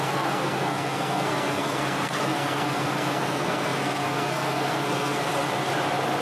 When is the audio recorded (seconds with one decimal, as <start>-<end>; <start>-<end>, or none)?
5.3-6.2